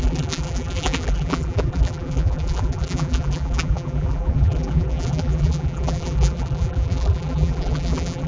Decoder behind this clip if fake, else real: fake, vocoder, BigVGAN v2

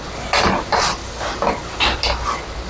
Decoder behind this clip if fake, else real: real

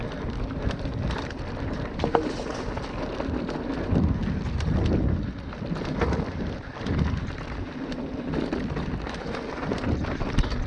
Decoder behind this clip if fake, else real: real